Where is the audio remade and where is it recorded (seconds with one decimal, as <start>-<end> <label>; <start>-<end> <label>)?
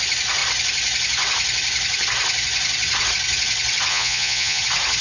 0.0-3.9 recorded; 3.9-4.6 remade; 4.6-5.0 recorded